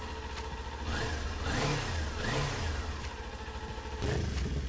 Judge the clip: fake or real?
real